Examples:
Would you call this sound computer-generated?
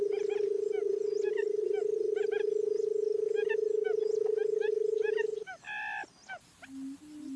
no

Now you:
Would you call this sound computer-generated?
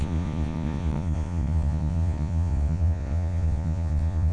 yes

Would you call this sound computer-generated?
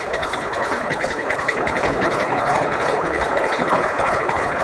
yes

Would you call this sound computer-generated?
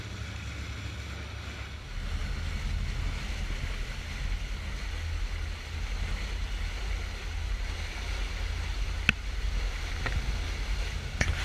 no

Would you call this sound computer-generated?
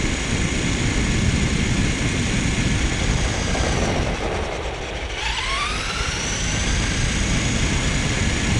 no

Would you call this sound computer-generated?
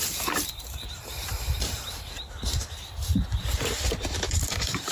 yes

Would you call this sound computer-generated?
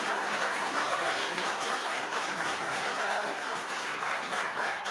yes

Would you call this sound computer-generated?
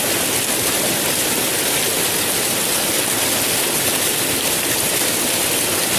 no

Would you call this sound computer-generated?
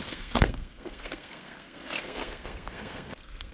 yes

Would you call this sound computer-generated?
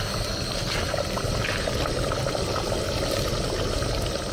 no